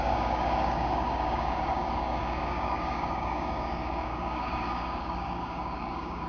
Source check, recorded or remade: remade